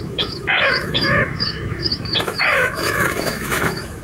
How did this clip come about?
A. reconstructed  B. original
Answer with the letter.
A